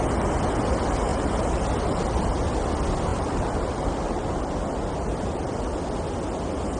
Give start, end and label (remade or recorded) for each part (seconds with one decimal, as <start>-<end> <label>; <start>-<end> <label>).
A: 0.0-1.1 recorded; 1.1-1.6 remade; 1.6-3.1 recorded; 3.1-4.4 remade; 4.4-6.8 recorded